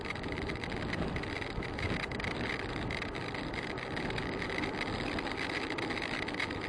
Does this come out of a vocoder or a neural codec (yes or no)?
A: no